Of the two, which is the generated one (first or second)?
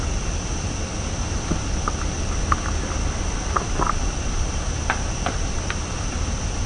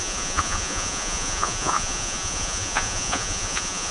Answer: second